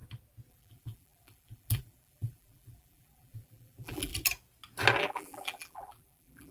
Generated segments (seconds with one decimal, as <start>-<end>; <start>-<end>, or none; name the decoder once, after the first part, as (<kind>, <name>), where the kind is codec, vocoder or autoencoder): 0.5-4.1 (vocoder, BigVGAN v2); 5.0-6.5